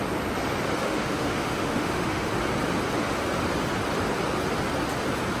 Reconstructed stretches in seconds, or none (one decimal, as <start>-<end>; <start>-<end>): 0.8-2.3